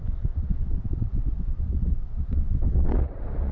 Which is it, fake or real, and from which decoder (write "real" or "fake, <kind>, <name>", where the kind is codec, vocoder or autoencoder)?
fake, vocoder, WaveNeXt